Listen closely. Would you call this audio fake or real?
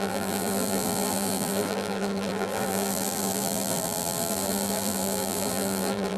fake